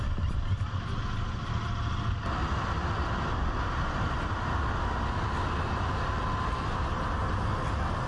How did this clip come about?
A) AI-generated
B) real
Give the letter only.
B